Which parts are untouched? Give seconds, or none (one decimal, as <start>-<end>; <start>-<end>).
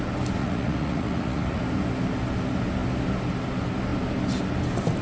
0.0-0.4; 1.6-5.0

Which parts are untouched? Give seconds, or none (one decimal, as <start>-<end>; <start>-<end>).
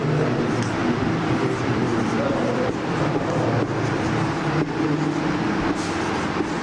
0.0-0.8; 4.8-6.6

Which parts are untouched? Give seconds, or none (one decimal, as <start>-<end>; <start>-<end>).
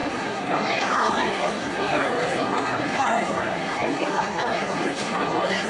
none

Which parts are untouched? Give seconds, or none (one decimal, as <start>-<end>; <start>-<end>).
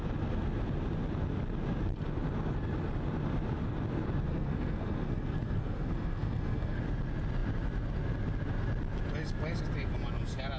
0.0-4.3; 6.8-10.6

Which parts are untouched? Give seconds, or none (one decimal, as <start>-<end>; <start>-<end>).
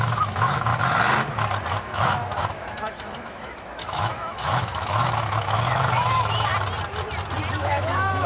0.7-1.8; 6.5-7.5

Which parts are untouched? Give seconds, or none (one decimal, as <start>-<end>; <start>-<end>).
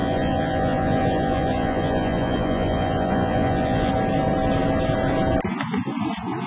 3.9-6.5